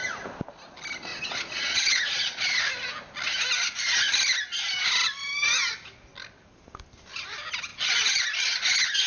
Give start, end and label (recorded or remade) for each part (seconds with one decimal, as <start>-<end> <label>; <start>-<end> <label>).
0.0-1.1 recorded; 1.1-2.7 remade; 2.7-7.7 recorded; 7.7-8.2 remade; 8.2-9.1 recorded